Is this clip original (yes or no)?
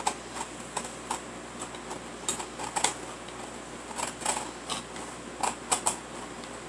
yes